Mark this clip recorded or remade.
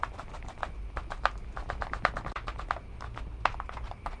recorded